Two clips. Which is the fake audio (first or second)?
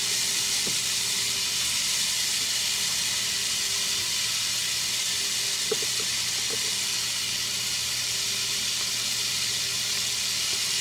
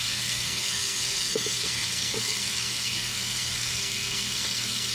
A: second